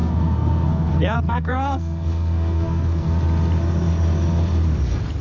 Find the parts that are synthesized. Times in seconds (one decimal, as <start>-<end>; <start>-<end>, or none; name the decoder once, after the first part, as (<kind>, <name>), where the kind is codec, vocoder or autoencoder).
0.0-3.1 (codec, SNAC)